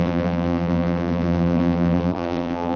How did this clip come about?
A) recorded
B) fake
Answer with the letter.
B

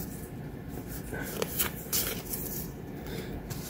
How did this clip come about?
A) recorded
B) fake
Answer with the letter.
B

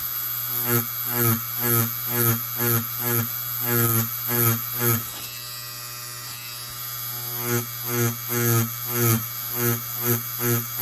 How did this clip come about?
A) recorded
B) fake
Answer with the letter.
A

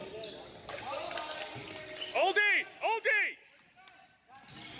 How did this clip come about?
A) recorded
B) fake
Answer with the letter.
A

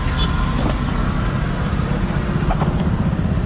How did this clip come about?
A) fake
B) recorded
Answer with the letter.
B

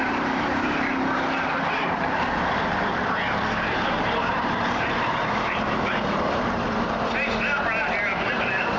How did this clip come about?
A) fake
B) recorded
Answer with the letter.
A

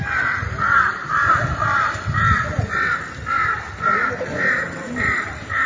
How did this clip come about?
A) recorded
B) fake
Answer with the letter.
A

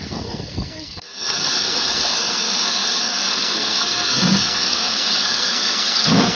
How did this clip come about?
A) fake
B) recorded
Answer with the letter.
A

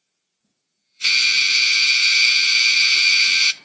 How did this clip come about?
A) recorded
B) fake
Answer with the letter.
B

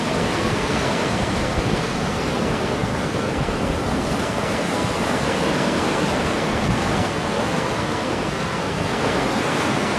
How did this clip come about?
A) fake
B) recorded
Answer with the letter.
A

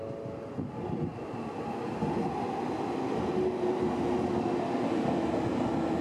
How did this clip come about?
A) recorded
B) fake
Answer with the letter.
A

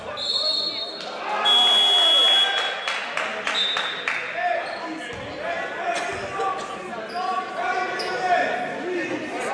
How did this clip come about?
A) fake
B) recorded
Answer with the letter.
B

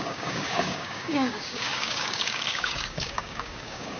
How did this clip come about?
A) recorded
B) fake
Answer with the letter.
B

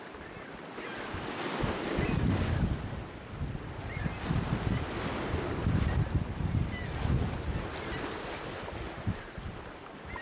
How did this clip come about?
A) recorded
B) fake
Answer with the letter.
A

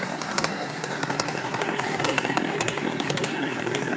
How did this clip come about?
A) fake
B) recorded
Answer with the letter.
A